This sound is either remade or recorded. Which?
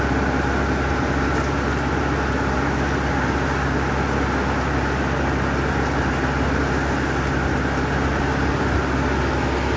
recorded